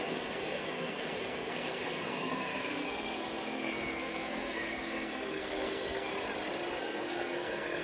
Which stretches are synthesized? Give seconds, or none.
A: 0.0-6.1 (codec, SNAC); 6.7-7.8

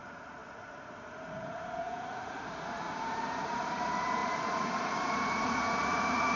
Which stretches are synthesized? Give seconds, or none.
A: 0.0-6.4 (vocoder, Vocos)